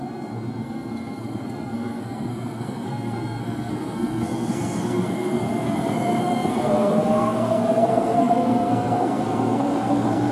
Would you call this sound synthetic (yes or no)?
yes